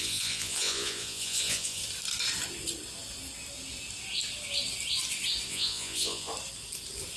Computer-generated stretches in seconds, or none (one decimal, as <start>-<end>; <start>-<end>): 0.0-1.8; 5.5-6.3

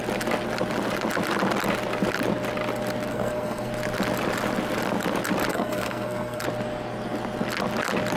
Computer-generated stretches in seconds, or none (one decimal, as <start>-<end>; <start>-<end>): 3.1-3.7; 5.5-6.4

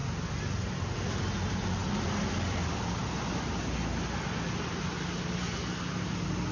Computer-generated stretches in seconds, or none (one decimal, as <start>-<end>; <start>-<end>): none

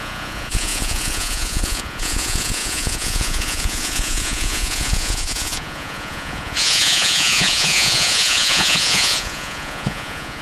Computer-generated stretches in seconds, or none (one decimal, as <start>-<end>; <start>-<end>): 0.0-10.4

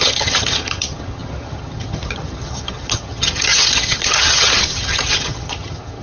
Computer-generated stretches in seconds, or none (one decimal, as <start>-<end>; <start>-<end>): 0.0-6.0

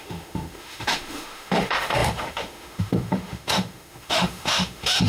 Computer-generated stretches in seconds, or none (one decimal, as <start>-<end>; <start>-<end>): 0.0-5.1

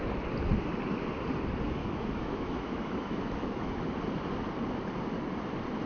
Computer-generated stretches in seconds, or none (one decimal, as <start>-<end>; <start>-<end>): 1.8-3.7

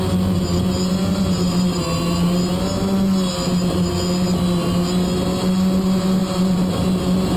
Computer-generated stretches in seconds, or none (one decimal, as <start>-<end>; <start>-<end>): 1.1-1.8; 6.2-6.7